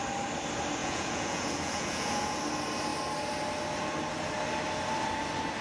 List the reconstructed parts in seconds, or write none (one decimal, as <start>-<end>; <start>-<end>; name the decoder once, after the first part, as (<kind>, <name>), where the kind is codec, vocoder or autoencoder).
0.8-2.4 (vocoder, Vocos)